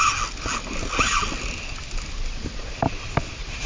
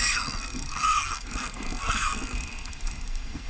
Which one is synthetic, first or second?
second